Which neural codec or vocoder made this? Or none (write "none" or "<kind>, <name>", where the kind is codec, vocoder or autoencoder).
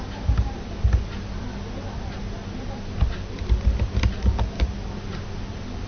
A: none